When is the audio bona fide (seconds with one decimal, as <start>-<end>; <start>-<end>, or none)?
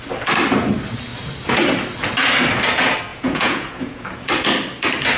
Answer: 0.0-3.1; 4.2-5.2